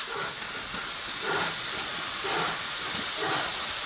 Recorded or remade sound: recorded